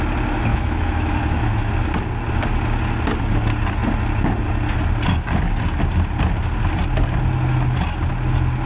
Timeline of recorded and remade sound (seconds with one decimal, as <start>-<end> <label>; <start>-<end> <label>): 0.0-0.5 recorded; 0.5-1.7 remade; 1.7-8.7 recorded